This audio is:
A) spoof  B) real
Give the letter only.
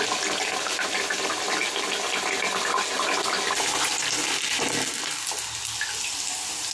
B